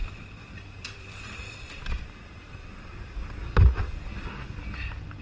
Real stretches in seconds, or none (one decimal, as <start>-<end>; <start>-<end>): 3.1-5.2